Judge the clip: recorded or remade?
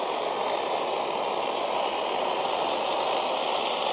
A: recorded